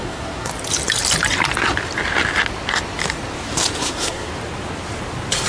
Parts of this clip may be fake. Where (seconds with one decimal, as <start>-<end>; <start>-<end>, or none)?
0.0-0.5; 3.8-4.3